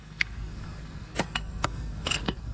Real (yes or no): no